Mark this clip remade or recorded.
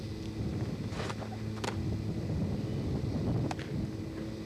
recorded